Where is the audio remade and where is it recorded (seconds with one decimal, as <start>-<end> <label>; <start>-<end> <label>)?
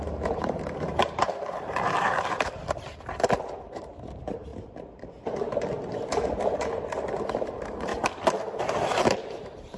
0.0-2.6 remade; 2.6-3.7 recorded; 3.7-4.5 remade; 4.5-7.5 recorded; 7.5-7.9 remade; 7.9-8.6 recorded; 8.6-9.8 remade